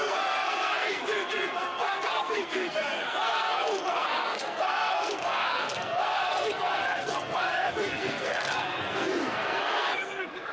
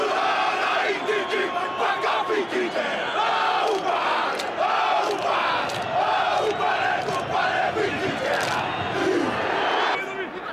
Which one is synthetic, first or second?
first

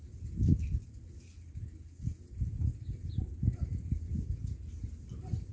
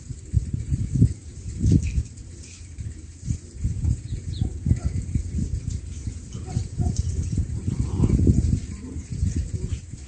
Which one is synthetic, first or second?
second